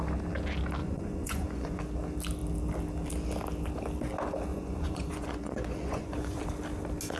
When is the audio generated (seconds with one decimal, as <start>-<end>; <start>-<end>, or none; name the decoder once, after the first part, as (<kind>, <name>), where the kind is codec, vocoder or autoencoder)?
0.8-1.8 (vocoder, Vocos); 4.5-6.4